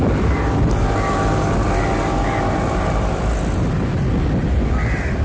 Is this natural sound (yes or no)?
yes